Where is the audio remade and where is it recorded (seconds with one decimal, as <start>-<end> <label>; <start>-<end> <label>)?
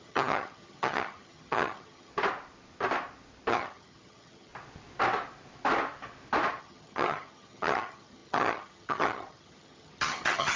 0.0-2.1 remade; 2.1-3.5 recorded; 3.5-4.5 remade; 4.5-6.6 recorded; 6.6-10.6 remade